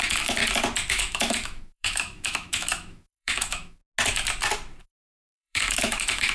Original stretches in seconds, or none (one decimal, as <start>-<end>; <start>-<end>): 0.4-0.9; 3.8-4.8